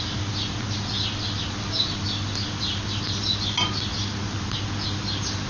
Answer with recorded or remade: recorded